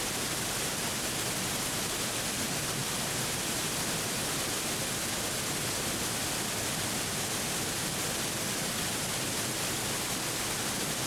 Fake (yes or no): no